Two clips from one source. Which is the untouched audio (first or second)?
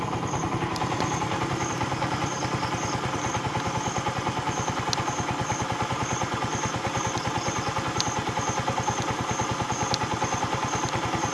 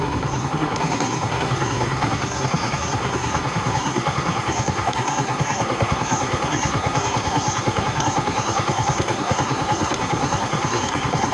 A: first